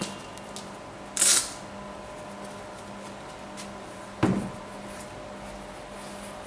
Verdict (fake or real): real